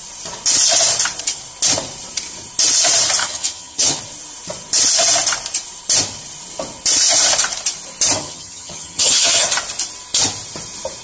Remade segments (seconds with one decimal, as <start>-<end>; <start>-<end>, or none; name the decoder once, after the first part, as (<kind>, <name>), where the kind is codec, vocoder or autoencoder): 3.2-4.0 (vocoder, HiFi-GAN); 8.2-9.5